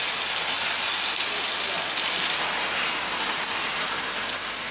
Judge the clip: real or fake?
real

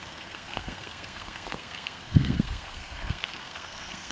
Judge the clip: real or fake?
fake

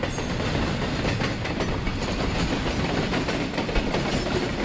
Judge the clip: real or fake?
real